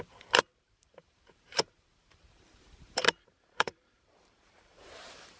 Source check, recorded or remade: remade